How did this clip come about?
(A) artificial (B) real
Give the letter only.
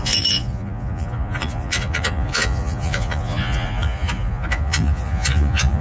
A